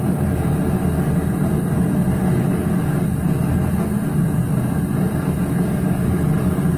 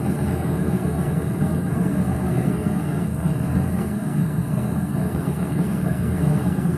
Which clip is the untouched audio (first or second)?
first